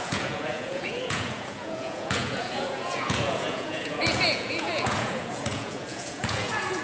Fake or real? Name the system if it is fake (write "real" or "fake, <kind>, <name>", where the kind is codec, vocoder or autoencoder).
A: fake, vocoder, Vocos